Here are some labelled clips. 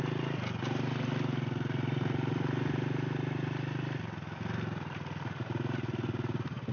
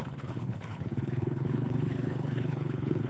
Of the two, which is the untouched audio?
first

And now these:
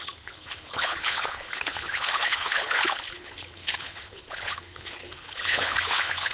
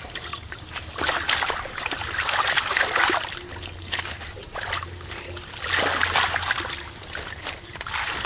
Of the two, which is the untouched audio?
second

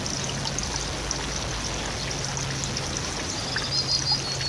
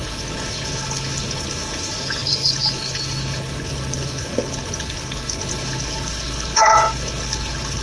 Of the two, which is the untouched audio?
first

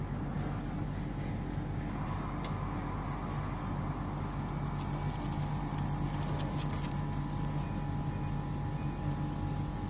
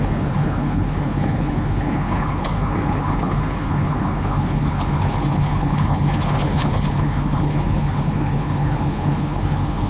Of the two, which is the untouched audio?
first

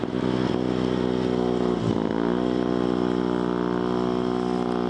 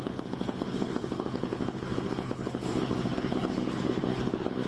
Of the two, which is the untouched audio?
first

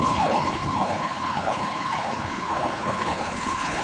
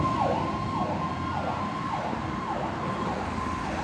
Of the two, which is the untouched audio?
second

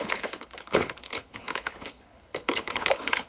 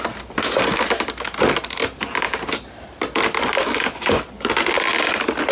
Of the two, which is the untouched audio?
second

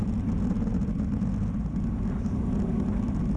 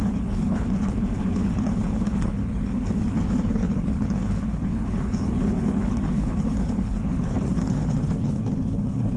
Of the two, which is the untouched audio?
first